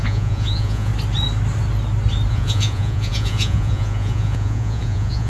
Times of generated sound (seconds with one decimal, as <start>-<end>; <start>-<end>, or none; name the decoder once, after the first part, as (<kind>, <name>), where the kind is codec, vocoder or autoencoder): 0.0-0.9 (vocoder, Vocos); 2.3-5.3